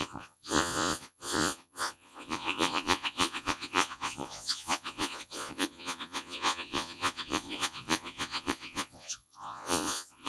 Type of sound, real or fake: fake